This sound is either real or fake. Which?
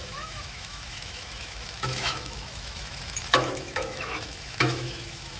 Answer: fake